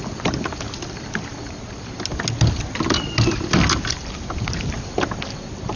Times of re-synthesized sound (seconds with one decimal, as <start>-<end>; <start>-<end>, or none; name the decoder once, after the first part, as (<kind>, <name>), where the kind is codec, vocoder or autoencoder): none